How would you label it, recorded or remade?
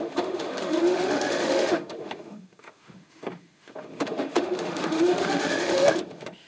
remade